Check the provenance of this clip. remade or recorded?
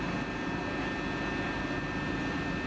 recorded